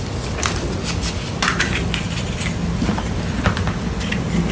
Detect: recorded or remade recorded